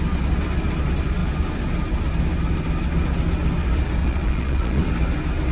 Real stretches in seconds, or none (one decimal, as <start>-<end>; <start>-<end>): 0.0-4.0; 4.8-5.5